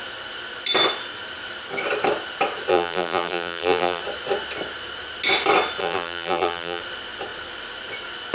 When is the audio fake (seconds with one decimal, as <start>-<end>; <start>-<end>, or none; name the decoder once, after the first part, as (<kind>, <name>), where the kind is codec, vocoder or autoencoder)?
2.7-4.0 (vocoder, BigVGAN v2); 5.8-6.8